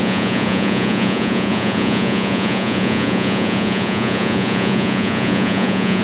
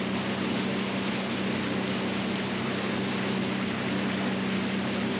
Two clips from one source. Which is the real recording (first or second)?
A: second